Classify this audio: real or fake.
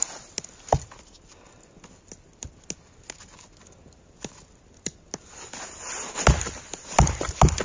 real